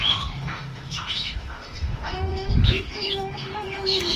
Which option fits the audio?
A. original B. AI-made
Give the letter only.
B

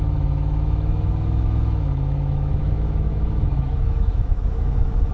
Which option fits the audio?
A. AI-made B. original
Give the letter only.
A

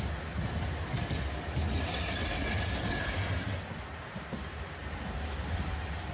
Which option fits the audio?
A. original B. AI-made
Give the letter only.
A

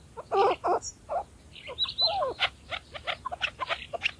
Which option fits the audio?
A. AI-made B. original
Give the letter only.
B